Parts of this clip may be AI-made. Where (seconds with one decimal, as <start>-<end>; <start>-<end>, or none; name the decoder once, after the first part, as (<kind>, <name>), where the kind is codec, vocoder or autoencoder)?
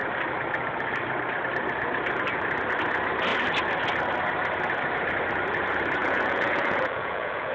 6.0-7.5 (vocoder, Vocos)